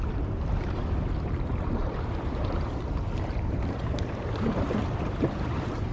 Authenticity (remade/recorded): remade